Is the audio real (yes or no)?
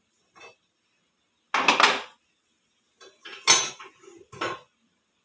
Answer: yes